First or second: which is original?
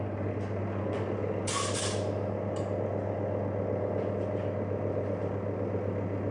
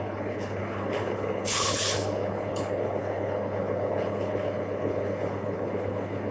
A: first